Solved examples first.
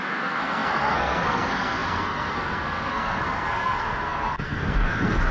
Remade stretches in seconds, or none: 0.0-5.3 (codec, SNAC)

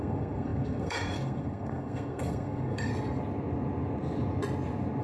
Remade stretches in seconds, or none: 0.0-2.9 (codec, SNAC)

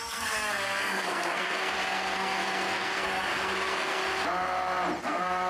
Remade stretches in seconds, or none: 0.0-4.0 (codec, SNAC); 5.0-5.5